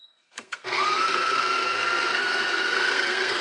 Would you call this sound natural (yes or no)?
no